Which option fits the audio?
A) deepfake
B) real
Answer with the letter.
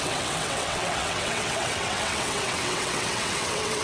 A